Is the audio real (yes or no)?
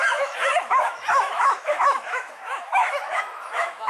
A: no